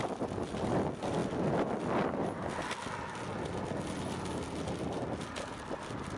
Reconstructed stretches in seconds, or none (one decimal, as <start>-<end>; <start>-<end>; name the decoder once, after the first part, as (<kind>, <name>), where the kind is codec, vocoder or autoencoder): none